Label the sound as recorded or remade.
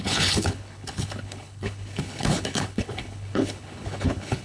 remade